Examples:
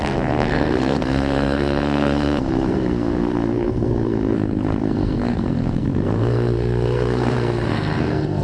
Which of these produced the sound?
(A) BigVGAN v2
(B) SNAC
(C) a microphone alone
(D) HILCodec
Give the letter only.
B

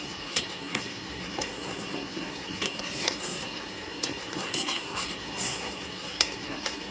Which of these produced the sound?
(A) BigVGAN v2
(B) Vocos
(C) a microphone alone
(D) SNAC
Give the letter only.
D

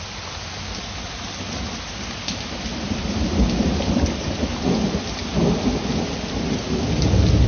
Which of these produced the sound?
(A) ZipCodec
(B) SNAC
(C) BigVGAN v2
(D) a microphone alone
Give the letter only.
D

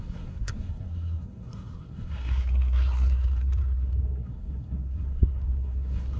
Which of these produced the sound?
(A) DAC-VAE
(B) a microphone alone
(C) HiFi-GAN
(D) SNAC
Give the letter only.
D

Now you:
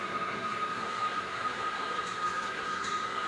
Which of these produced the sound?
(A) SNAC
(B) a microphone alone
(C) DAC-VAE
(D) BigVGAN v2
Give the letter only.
A